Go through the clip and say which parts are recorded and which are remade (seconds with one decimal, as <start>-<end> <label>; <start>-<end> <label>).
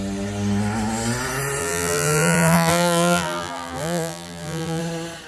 0.0-1.6 recorded; 1.6-4.8 remade; 4.8-5.3 recorded